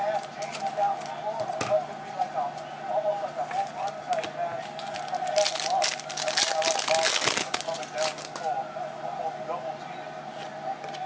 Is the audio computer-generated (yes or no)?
no